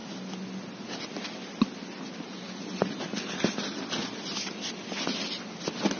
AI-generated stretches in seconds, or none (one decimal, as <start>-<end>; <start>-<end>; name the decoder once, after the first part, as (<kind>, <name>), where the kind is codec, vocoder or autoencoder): none